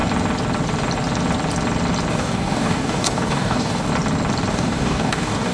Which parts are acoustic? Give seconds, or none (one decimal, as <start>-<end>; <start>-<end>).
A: 0.0-2.1; 3.9-4.5